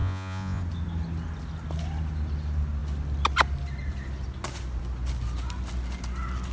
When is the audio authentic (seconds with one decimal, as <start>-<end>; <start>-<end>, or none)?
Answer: 0.6-6.5